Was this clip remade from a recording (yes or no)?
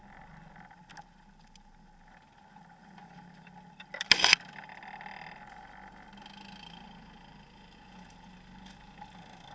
no